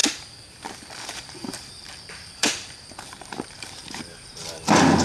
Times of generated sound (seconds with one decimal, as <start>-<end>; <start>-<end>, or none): 0.0-5.0